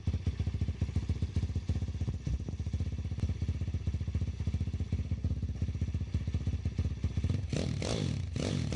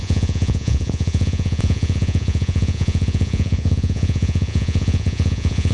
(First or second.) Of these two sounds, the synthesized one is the second